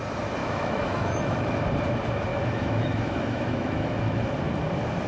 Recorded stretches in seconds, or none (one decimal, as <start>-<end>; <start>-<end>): 0.0-0.4; 1.6-2.3; 4.3-5.1